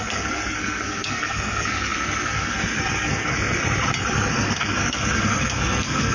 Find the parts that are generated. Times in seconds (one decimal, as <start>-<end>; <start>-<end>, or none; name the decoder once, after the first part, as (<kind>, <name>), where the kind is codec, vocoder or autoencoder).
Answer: 0.0-3.6 (codec, SNAC); 4.3-6.1